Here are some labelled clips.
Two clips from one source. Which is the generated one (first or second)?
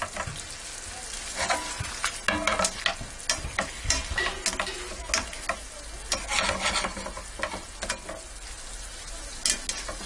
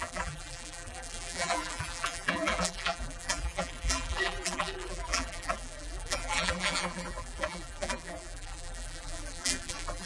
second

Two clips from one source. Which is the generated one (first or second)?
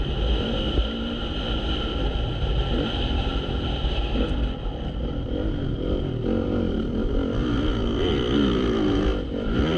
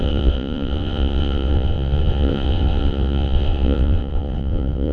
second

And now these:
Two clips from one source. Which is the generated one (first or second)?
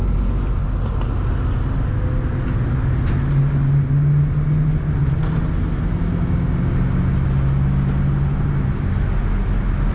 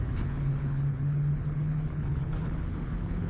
second